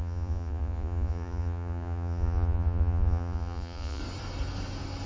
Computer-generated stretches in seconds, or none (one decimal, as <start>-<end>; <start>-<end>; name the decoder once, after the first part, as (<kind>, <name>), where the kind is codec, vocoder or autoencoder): 0.0-4.0 (vocoder, Vocos)